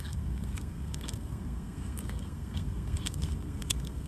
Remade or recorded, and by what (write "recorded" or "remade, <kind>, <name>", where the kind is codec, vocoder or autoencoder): remade, codec, SNAC